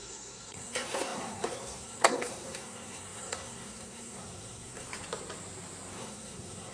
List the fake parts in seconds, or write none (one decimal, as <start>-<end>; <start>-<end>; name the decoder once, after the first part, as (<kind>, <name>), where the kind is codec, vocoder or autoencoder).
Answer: 0.0-4.9 (codec, SNAC); 5.9-6.7